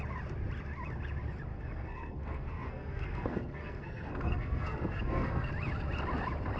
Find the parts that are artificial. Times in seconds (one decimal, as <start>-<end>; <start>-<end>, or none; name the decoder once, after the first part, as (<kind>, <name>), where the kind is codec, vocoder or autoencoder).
1.5-5.5 (codec, SNAC)